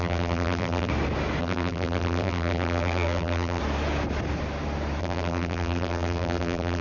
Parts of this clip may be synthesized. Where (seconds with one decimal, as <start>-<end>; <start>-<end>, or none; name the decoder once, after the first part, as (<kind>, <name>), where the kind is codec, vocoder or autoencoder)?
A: 0.0-0.9 (vocoder, BigVGAN v2); 1.4-3.6; 5.0-6.8